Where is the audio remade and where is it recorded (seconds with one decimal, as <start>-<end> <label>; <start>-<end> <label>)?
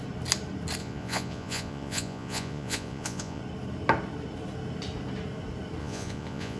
0.0-0.8 recorded; 0.8-3.4 remade; 3.4-5.8 recorded; 5.8-6.6 remade